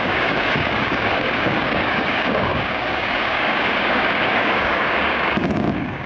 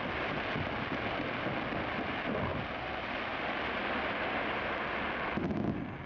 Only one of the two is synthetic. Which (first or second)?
first